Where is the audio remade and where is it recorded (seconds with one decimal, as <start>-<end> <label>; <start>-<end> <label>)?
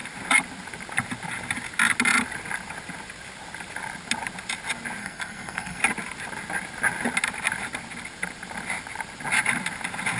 0.0-5.0 recorded; 5.0-5.8 remade; 5.8-10.2 recorded